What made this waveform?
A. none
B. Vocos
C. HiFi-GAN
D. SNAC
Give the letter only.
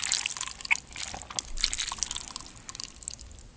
A